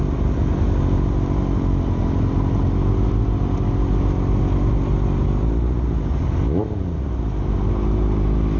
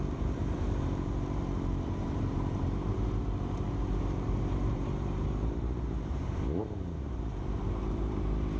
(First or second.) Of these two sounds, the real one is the first